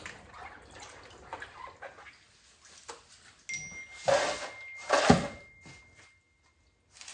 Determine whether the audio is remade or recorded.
recorded